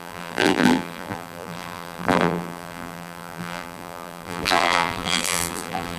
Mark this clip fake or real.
fake